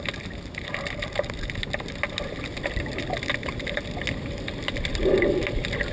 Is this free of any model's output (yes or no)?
yes